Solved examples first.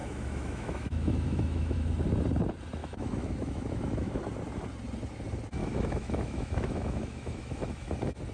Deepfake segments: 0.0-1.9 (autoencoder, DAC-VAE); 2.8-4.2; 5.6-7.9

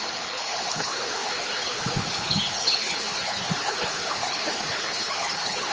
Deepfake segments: 0.0-5.7 (codec, HILCodec)

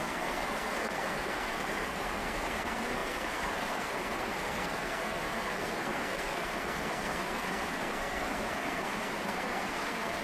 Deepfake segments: 0.0-10.2 (codec, SNAC)

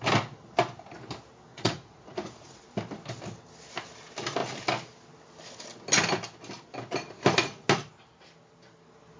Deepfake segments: 1.5-2.6 (vocoder, Vocos)

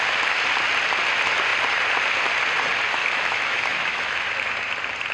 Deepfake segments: 3.0-4.3 (autoencoder, DAC-VAE)

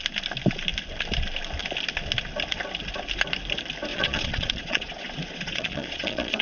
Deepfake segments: 3.9-6.4 (vocoder, Vocos)